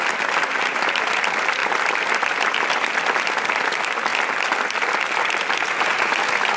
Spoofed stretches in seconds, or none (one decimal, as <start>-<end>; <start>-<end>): none